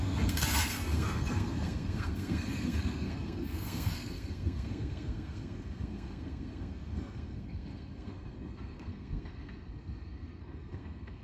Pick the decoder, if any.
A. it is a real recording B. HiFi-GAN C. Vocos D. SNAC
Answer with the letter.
D